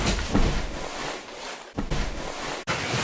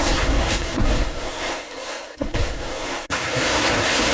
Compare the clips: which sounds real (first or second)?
first